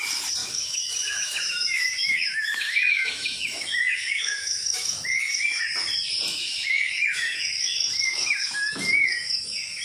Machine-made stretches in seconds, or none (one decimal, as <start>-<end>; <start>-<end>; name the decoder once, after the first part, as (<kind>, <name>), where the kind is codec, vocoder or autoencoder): 0.4-5.6 (autoencoder, DAC-VAE); 6.3-9.8